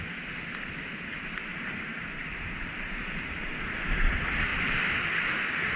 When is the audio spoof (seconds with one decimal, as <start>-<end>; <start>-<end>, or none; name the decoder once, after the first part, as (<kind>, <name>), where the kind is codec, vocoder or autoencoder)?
1.5-3.4 (vocoder, BigVGAN v2)